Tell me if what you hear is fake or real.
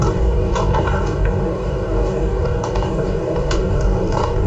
fake